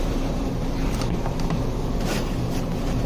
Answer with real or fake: fake